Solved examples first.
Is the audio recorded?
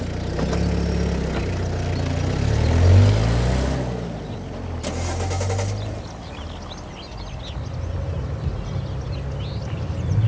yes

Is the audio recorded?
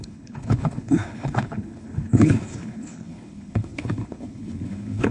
no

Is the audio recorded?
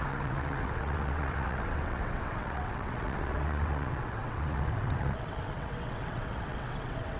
no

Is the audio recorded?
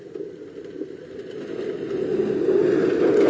yes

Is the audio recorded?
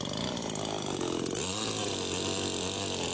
yes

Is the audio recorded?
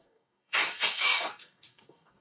no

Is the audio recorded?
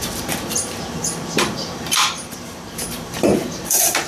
no